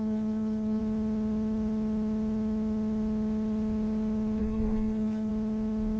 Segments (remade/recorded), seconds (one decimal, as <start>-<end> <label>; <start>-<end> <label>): 0.0-0.8 remade; 0.8-4.4 recorded; 4.4-5.3 remade; 5.3-6.0 recorded